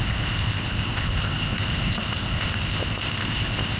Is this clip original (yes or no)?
no